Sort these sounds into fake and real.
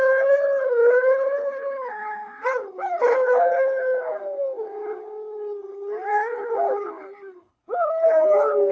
fake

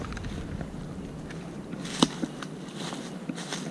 real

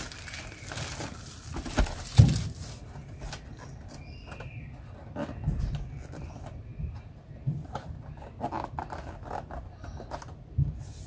real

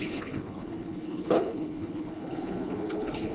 fake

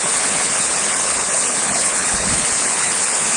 fake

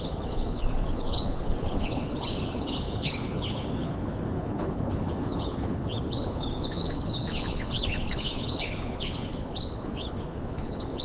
fake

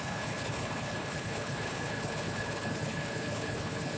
fake